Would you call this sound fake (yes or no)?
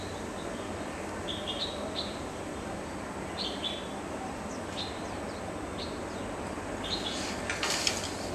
no